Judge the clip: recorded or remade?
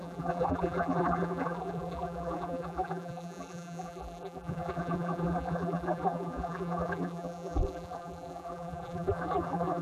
remade